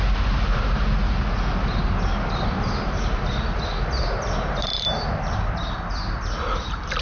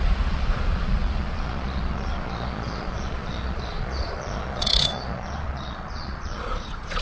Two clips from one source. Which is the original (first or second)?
first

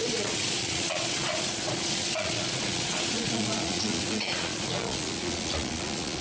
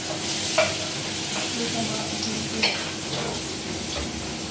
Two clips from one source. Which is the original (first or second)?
second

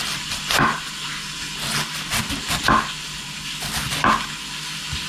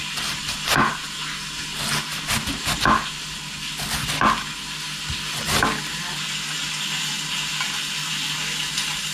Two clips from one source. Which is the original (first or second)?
second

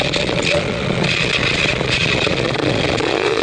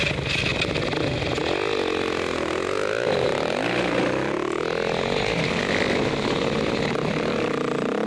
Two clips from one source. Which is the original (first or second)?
second